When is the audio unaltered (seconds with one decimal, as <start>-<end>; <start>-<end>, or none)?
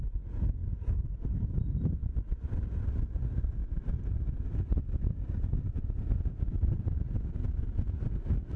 0.0-0.6; 1.9-3.6